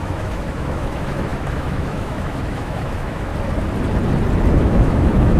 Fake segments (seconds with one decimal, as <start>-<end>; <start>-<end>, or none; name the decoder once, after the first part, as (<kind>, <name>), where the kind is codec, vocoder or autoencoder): 0.0-3.3 (autoencoder, DAC-VAE); 4.6-5.4